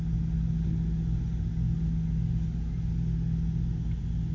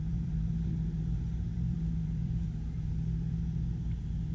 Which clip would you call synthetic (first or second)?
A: second